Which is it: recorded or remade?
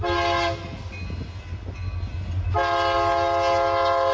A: recorded